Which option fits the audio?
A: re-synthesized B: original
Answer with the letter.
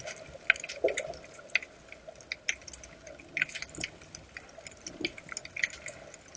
B